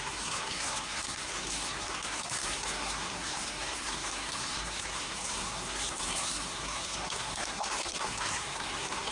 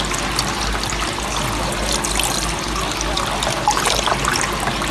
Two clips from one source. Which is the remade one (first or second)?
first